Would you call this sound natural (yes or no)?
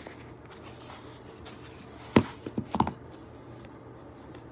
yes